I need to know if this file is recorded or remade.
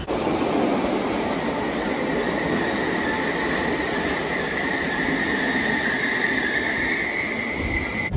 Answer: recorded